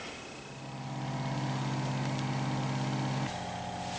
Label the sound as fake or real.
real